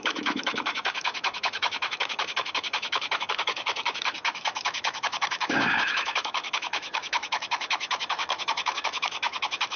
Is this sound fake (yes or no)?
yes